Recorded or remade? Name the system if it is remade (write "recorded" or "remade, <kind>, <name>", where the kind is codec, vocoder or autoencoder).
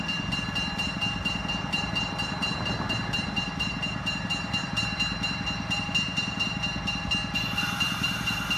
recorded